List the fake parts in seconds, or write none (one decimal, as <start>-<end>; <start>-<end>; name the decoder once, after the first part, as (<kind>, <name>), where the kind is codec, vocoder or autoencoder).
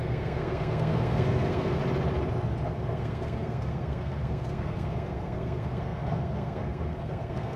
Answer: 0.0-1.8 (codec, SNAC); 2.7-7.6